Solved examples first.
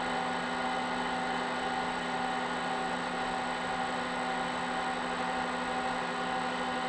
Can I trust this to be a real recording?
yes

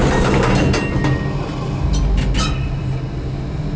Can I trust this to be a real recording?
yes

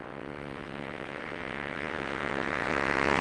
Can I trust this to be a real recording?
no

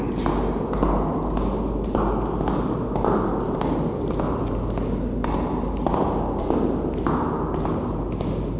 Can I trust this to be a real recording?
yes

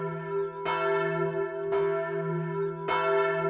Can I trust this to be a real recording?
yes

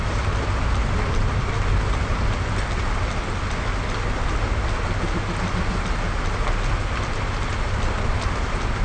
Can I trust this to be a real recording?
yes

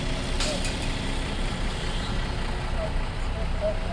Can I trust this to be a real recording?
yes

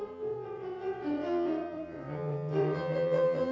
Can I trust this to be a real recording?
no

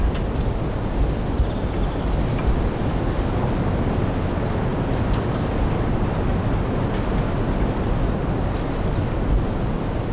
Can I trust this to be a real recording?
yes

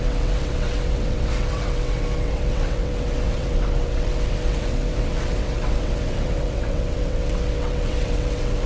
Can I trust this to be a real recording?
no